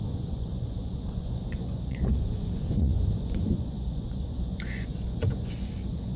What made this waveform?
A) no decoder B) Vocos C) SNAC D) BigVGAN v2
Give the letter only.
B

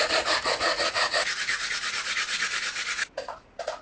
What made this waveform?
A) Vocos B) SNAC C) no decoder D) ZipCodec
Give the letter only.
A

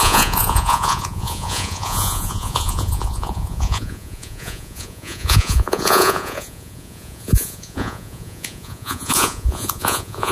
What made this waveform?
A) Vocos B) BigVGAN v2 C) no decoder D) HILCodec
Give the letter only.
A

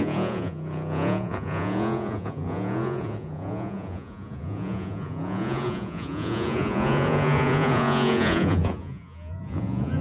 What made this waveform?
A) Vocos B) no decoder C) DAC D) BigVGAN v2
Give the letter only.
A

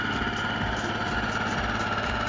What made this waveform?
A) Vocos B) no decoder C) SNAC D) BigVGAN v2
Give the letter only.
B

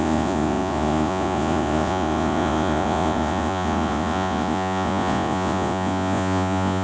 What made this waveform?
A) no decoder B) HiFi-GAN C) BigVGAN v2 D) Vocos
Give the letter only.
D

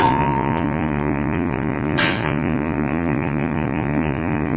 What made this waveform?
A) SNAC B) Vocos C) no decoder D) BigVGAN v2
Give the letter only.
B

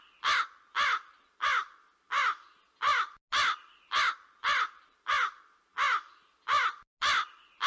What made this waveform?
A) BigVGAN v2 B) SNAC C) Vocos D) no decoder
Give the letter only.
D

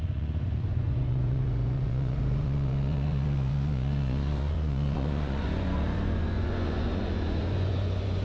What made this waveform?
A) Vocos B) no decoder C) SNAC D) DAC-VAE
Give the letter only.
A